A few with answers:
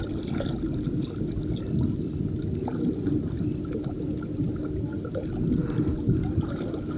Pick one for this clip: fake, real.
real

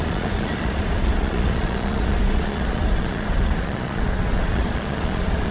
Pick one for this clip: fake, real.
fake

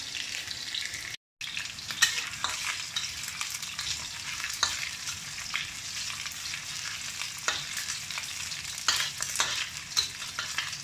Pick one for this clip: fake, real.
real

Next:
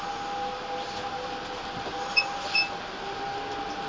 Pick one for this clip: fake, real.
real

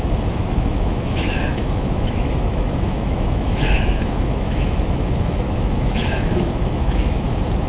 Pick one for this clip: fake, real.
fake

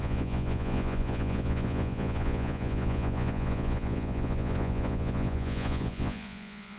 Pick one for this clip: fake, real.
fake